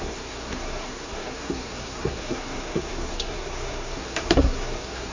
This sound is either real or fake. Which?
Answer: fake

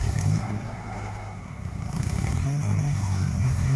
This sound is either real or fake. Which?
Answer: fake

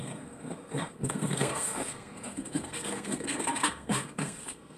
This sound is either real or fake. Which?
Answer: fake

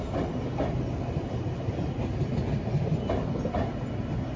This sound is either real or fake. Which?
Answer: real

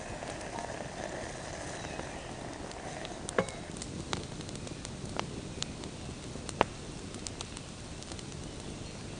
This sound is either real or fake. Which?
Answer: real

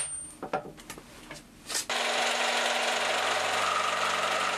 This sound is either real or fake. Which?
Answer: real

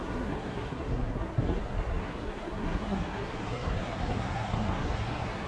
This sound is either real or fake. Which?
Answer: fake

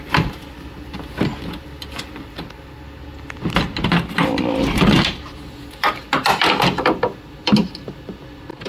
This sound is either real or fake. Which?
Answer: real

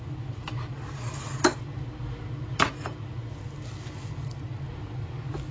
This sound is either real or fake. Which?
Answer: real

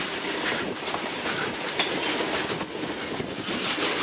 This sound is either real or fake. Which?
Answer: real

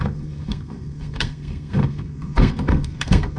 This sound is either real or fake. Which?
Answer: fake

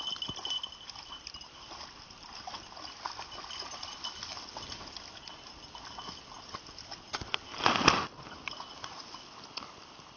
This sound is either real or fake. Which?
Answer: real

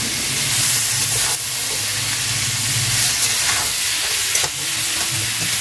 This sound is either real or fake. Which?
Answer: real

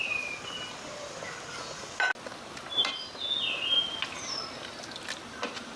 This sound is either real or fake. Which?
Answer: real